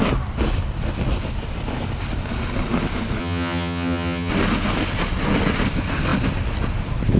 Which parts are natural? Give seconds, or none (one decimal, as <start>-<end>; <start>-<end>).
0.0-3.2; 4.3-7.2

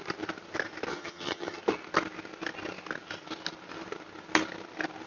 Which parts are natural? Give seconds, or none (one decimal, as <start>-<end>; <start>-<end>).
0.0-0.9; 1.6-5.1